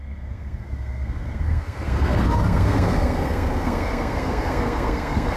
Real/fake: fake